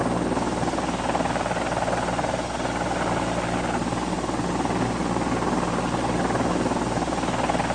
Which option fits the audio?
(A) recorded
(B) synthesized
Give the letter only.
A